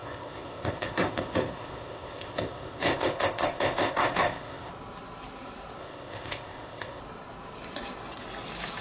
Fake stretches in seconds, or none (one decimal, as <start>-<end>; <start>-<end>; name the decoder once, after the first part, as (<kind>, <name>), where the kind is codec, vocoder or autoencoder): 0.0-4.7 (codec, ZipCodec); 5.8-7.0